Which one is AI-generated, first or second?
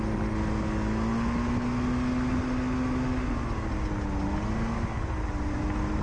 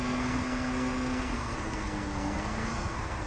second